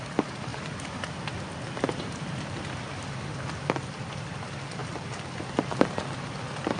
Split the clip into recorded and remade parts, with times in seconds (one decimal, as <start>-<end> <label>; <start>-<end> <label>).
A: 0.0-0.5 remade; 0.5-3.7 recorded; 3.7-4.8 remade; 4.8-6.0 recorded; 6.0-6.8 remade